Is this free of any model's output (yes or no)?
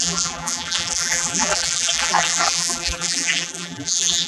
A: no